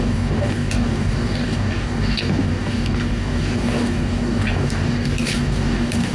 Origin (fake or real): fake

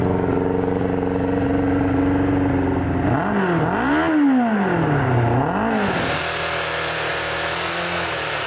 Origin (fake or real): real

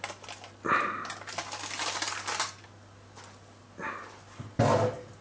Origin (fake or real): real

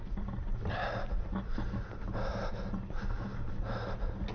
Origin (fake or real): real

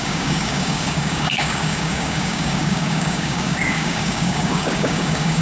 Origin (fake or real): fake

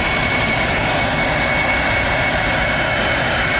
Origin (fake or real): real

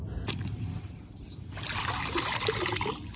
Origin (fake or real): real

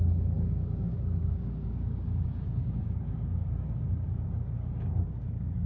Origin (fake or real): fake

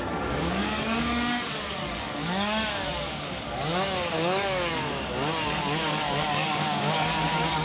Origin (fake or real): fake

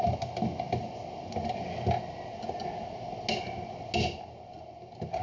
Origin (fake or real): real